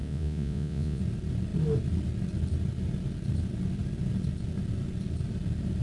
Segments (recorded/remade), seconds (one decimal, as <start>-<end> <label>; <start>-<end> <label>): 0.0-1.0 remade; 1.0-5.8 recorded